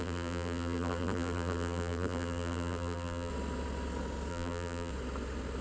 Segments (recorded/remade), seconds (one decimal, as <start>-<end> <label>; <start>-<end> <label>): 0.0-3.3 remade; 3.3-4.3 recorded; 4.3-4.9 remade; 4.9-5.6 recorded